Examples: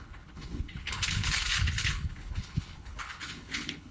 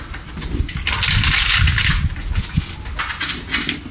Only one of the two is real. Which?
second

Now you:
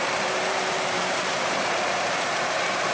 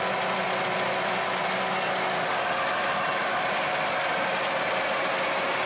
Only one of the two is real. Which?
second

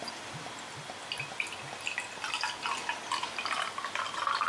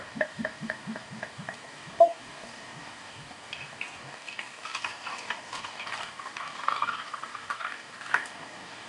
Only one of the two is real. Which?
first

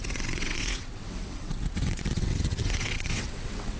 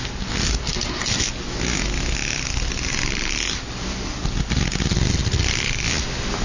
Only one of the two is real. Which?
second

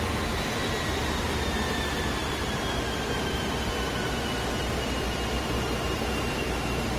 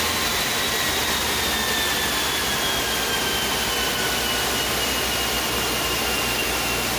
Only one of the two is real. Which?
second